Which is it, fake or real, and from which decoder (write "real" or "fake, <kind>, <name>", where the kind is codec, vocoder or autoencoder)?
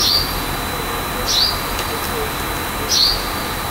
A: real